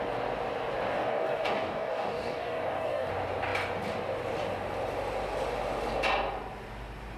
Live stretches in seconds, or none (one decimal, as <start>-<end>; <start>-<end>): 0.0-0.9; 3.1-7.2